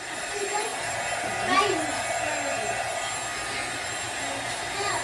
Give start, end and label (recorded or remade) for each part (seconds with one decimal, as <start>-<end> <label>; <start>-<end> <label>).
0.0-5.0 recorded